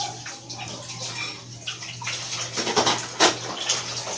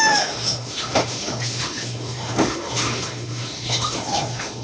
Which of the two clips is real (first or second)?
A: first